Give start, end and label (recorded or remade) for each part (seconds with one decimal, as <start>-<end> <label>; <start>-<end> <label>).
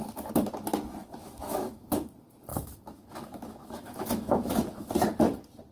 0.0-1.0 recorded; 1.0-2.1 remade; 2.1-2.5 recorded; 2.5-4.9 remade; 4.9-5.7 recorded